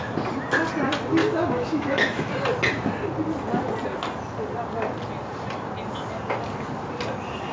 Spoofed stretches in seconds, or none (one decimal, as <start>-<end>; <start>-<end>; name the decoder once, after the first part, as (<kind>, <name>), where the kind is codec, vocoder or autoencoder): 1.2-2.3 (autoencoder, DAC-VAE)